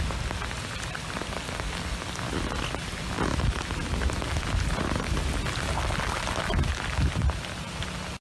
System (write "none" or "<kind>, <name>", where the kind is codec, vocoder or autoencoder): none